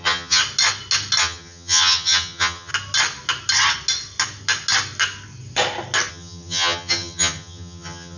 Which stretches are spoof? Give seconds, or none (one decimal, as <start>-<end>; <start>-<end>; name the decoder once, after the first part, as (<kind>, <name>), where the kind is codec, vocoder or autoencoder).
0.0-0.4 (vocoder, HiFi-GAN); 1.2-2.7; 6.1-8.2